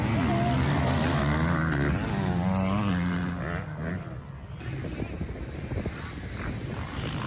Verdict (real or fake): real